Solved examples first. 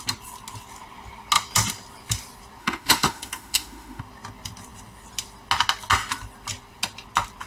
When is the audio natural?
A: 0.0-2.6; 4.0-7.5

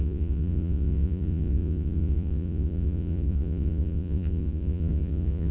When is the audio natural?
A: none

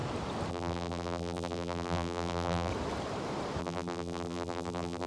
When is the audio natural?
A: 0.0-0.5; 2.7-3.6

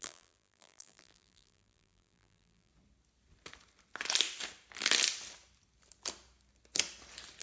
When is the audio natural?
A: 2.7-7.4

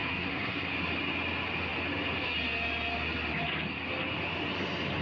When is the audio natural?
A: 0.7-5.0